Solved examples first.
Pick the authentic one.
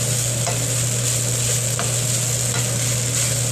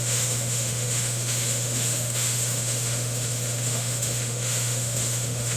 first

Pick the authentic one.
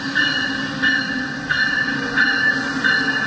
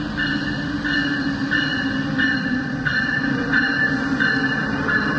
first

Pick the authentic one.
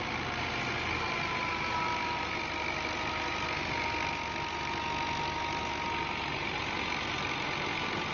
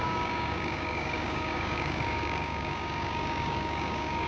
first